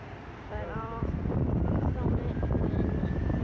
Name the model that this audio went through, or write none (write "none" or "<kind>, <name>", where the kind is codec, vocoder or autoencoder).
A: vocoder, BigVGAN v2